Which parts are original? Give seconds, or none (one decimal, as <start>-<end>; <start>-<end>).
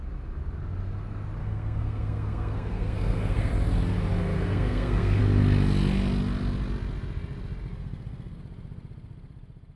0.0-1.4; 3.5-4.2; 5.2-7.7; 8.4-9.8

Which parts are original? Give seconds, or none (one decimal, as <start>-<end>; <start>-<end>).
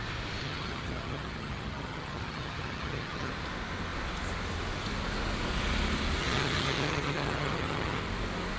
0.0-0.4; 3.3-6.2; 8.0-8.6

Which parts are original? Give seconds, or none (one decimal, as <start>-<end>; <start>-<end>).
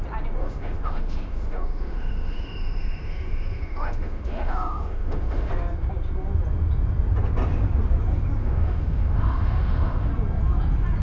0.0-0.4; 5.5-8.4; 10.1-11.0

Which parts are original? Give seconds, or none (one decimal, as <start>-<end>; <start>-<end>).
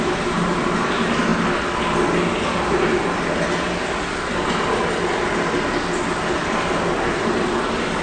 0.0-8.0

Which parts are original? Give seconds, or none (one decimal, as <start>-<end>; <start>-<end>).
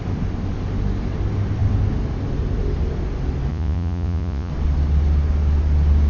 0.0-3.5; 4.5-6.1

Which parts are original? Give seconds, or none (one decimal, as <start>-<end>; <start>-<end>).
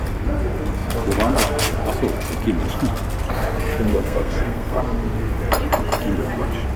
0.0-3.9; 4.8-6.8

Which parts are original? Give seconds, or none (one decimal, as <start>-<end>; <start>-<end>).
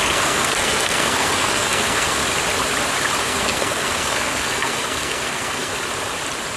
2.2-3.2; 5.7-6.6